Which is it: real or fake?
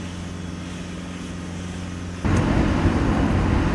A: real